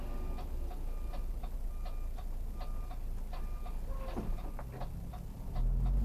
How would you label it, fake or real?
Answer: real